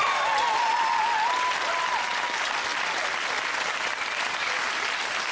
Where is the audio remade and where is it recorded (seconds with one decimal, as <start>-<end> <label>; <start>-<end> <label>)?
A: 0.0-5.3 recorded